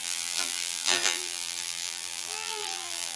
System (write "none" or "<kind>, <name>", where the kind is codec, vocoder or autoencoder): vocoder, BigVGAN v2